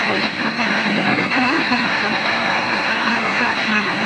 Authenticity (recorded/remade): remade